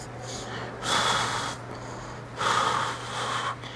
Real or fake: real